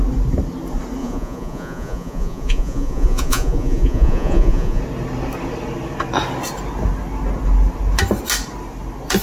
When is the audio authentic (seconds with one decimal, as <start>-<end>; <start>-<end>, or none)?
0.0-1.0; 4.8-9.2